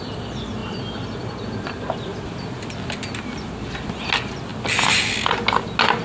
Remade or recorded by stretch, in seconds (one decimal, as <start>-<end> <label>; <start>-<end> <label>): 0.0-6.0 recorded